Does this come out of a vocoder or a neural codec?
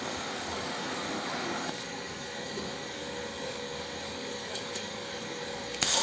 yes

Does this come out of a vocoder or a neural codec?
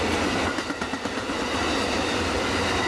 no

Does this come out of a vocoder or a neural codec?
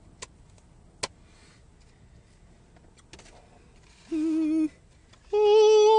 no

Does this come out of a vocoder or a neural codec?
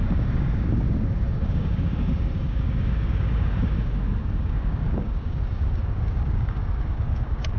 yes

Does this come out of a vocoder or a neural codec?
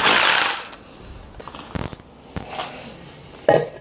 no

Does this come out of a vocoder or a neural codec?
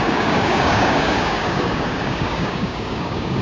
yes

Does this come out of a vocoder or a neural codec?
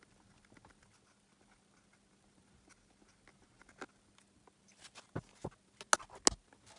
no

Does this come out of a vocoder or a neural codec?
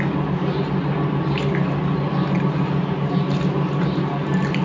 no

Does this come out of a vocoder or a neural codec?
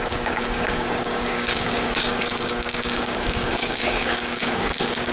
yes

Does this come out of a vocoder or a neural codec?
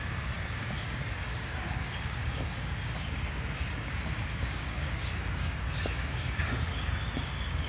yes